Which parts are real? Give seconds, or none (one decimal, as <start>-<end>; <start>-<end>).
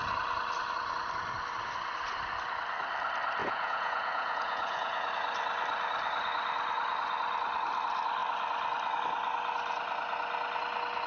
0.0-3.4; 5.1-11.1